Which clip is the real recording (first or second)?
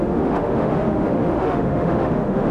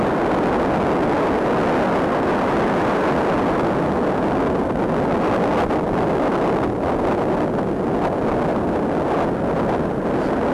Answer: second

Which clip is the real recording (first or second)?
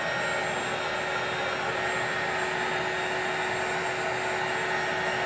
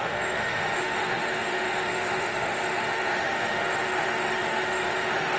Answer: first